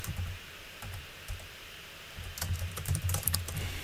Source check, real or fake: fake